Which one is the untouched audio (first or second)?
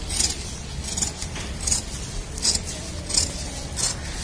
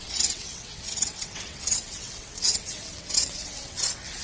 first